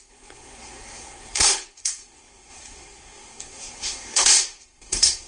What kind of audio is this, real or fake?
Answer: fake